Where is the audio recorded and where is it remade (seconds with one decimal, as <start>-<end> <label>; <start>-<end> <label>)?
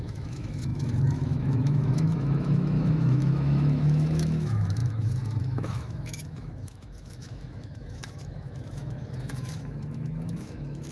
0.0-10.9 remade